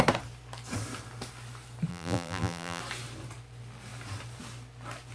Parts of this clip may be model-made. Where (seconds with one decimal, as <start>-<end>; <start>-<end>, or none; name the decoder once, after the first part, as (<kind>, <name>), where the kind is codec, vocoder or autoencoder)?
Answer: 1.9-2.8 (vocoder, BigVGAN v2)